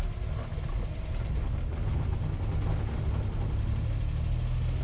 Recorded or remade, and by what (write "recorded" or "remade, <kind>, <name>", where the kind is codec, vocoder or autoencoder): recorded